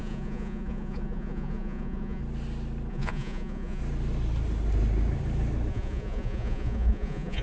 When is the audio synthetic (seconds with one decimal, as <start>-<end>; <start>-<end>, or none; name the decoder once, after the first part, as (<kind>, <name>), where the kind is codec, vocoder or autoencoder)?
0.0-2.2 (vocoder, Vocos); 2.9-3.8; 5.7-7.4